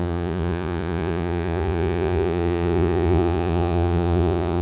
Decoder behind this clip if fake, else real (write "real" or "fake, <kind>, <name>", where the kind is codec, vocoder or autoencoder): fake, vocoder, Vocos